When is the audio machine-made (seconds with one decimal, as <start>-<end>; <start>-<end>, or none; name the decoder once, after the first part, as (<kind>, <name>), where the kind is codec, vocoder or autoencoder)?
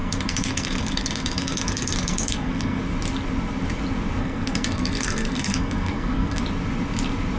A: 0.0-2.8 (codec, SNAC); 4.2-6.4